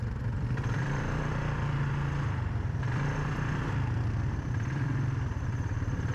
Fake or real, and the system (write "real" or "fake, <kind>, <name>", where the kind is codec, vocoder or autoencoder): fake, vocoder, BigVGAN v2